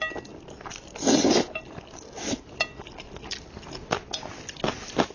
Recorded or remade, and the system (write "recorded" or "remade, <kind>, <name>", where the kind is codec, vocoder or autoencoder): recorded